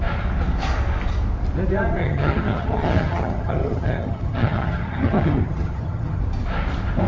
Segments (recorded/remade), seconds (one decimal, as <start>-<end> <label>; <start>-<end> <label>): 0.0-2.0 recorded; 2.0-6.2 remade; 6.2-7.1 recorded